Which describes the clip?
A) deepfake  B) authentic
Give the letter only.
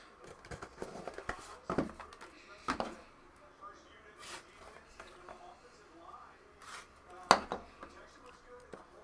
B